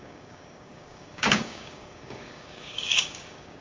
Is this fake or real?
fake